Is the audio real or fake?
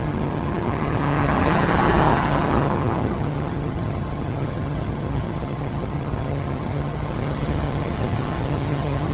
fake